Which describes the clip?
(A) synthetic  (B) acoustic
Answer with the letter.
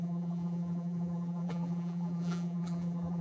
A